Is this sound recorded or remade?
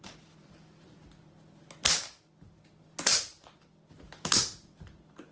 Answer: recorded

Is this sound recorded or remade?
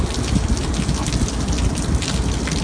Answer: recorded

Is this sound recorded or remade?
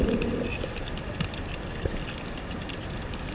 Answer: recorded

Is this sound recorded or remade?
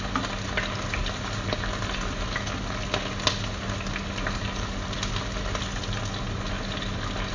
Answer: recorded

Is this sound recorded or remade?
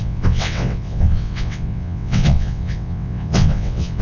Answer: remade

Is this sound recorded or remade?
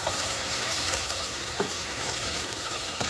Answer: remade